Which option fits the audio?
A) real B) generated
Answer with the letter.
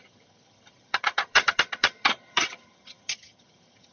B